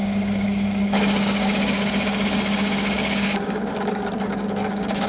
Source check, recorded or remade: remade